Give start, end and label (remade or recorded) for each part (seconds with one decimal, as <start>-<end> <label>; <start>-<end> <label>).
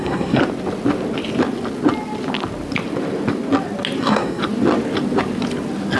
0.0-0.4 remade; 0.4-4.0 recorded; 4.0-4.4 remade; 4.4-6.0 recorded